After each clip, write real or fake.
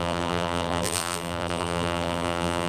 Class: fake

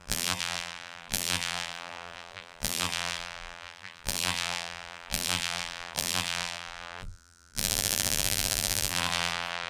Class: fake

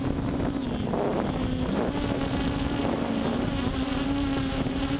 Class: real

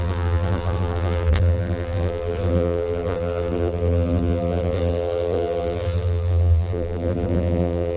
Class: fake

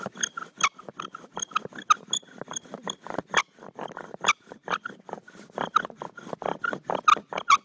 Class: real